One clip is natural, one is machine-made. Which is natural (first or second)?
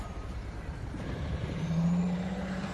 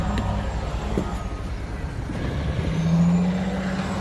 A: second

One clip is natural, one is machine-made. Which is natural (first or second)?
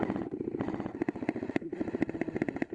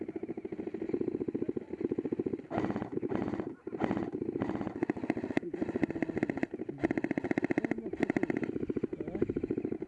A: second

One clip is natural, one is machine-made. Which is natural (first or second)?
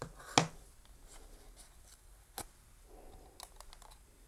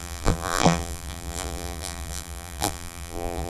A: first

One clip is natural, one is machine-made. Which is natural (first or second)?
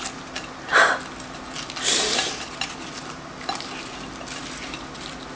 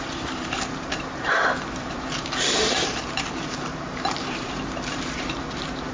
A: first